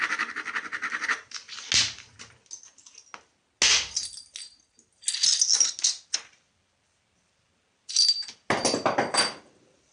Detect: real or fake real